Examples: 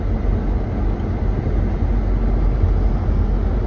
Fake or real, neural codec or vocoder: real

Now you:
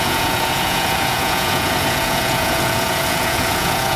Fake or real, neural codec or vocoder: fake, vocoder, Vocos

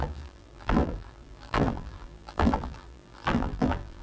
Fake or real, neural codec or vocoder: fake, vocoder, BigVGAN v2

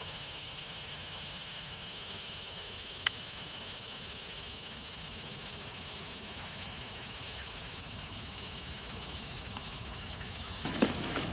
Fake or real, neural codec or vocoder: fake, autoencoder, DAC-VAE